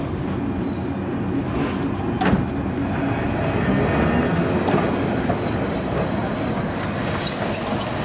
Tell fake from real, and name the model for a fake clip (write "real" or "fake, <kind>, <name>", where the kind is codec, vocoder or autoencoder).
real